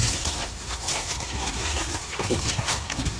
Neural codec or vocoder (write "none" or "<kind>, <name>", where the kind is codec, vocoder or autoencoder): codec, SNAC